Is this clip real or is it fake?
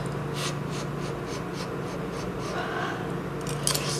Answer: real